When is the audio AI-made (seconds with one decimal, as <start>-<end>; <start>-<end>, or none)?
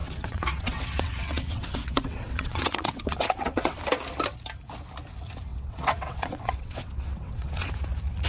0.0-3.8; 5.5-7.7